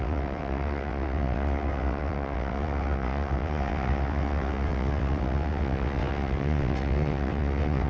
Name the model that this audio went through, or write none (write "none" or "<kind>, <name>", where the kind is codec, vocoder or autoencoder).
vocoder, WaveNeXt